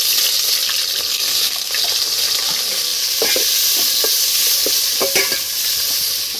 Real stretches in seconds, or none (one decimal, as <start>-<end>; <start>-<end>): 0.0-1.1; 1.7-6.4